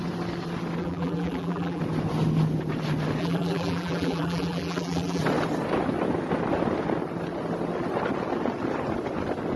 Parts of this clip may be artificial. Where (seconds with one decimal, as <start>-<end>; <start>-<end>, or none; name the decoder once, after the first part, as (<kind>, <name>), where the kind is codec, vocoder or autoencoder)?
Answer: 0.8-1.8 (vocoder, BigVGAN v2); 3.2-5.2